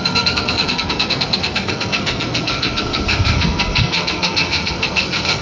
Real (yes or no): no